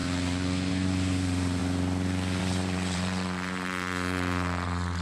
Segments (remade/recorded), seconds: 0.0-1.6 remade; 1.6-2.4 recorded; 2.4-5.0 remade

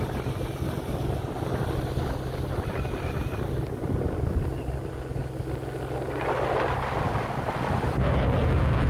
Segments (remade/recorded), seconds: 0.0-8.9 recorded

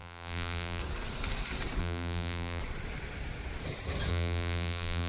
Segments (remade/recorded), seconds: 0.0-0.8 remade; 0.8-1.8 recorded; 1.8-2.6 remade; 2.6-4.1 recorded; 4.1-5.1 remade